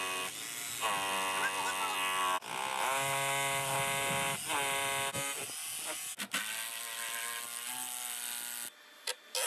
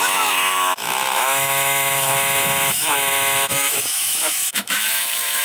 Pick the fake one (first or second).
second